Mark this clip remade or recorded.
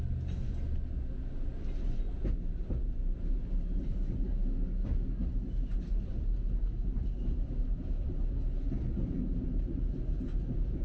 recorded